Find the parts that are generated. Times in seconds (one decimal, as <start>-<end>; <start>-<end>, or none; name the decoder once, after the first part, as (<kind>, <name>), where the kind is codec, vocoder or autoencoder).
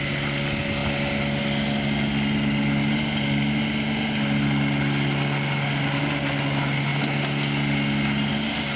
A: none